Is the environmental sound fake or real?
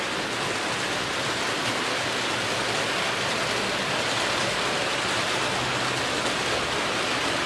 real